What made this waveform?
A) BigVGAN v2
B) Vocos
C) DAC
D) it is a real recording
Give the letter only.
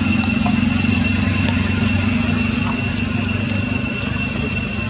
D